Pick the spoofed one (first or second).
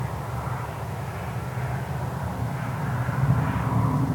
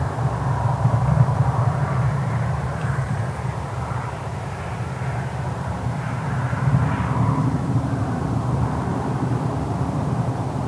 second